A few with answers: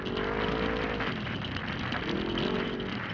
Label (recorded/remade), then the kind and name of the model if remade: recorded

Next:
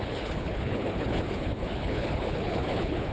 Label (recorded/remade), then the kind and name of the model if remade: remade, codec, HILCodec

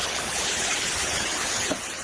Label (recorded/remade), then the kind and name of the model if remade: remade, codec, HILCodec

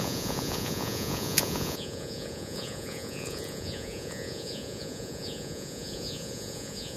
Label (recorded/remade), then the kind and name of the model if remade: remade, vocoder, Vocos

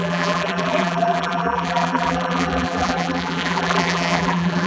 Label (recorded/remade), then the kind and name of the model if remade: remade, vocoder, BigVGAN v2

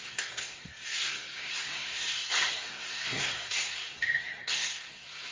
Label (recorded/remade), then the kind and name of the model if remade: remade, codec, SNAC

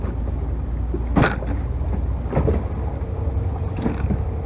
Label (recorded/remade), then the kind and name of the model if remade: recorded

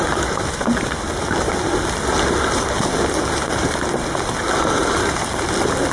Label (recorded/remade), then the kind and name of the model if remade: recorded